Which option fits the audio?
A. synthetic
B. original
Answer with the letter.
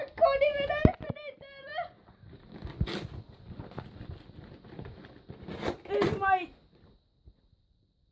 B